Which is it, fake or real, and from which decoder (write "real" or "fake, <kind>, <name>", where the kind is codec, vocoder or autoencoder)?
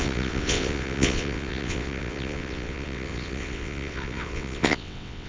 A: fake, vocoder, WaveNeXt